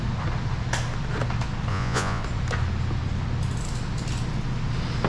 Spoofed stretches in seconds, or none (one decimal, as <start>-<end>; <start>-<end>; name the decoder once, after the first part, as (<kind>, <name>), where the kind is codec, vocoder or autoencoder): 1.7-2.2 (vocoder, Vocos)